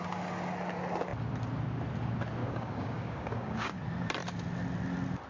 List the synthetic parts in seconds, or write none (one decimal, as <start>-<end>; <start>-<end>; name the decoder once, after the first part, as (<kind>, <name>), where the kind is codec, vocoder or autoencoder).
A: 2.4-3.8 (codec, DAC)